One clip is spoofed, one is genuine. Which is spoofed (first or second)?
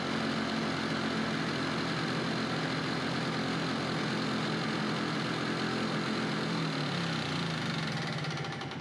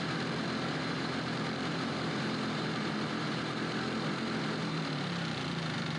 second